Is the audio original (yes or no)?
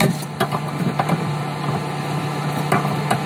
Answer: yes